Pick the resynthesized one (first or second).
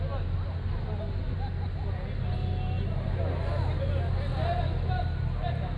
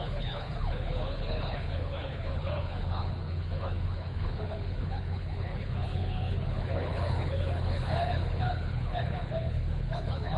second